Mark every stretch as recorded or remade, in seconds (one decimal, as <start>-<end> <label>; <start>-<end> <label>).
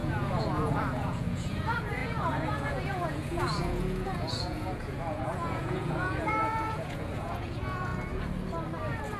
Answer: 0.0-7.9 remade; 7.9-9.2 recorded